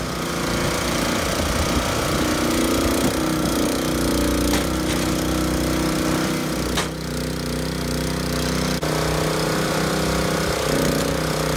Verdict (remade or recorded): recorded